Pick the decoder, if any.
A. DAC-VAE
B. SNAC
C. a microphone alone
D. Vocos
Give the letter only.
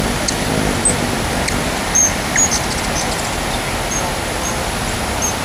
C